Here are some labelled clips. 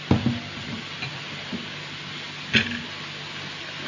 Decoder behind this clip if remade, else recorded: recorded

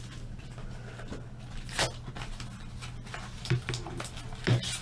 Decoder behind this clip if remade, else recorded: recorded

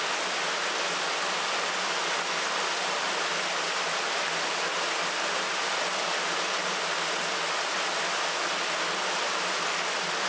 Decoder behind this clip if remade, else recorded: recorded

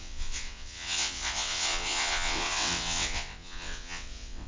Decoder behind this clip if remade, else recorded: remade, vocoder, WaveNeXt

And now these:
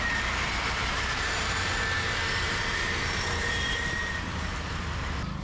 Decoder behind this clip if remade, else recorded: remade, vocoder, BigVGAN v2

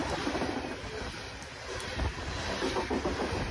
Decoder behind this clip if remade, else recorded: recorded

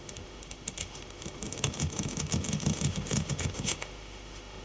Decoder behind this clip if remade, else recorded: remade, autoencoder, DAC-VAE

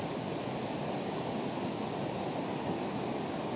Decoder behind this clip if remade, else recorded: recorded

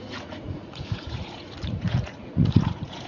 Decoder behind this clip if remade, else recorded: remade, vocoder, Vocos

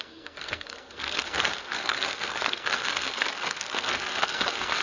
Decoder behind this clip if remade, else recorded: remade, codec, SNAC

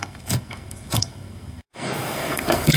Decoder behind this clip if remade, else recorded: remade, codec, SNAC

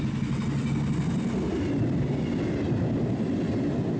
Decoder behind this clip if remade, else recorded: recorded